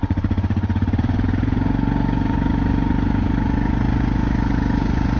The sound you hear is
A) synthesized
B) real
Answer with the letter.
A